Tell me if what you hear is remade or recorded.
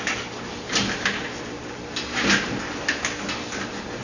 recorded